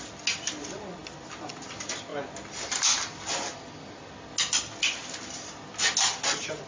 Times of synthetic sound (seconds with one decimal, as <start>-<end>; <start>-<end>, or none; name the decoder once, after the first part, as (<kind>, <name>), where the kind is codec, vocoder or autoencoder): none